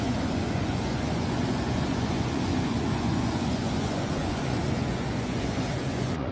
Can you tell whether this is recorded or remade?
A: remade